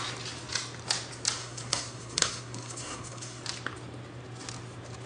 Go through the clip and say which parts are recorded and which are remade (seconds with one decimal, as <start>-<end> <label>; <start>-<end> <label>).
0.0-1.4 recorded; 1.4-3.4 remade; 3.4-5.1 recorded